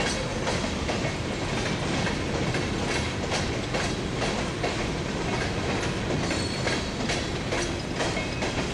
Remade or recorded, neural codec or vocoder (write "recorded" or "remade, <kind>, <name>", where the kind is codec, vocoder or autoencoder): recorded